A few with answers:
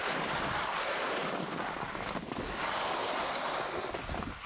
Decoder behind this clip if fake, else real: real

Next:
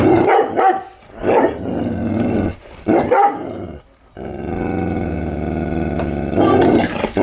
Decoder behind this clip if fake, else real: real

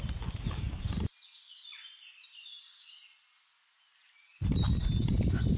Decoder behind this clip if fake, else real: real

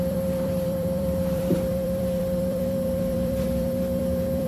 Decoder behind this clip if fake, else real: fake, vocoder, BigVGAN v2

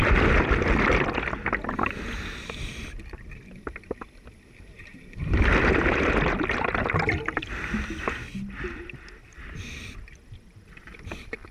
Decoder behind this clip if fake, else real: fake, vocoder, BigVGAN v2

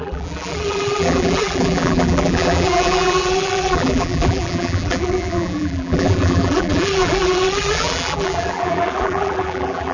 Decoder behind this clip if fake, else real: fake, vocoder, BigVGAN v2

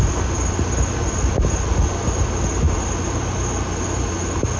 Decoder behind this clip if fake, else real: real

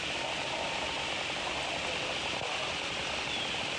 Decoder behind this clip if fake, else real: real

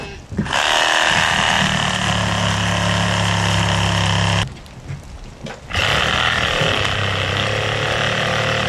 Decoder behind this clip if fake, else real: real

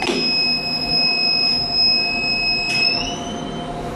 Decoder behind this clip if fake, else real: real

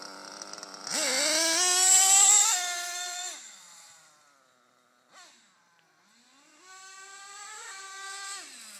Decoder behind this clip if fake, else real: real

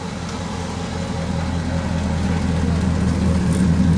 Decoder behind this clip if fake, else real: real